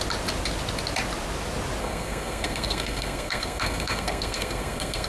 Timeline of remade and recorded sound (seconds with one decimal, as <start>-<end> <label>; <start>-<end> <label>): 0.0-1.8 recorded; 1.8-5.1 remade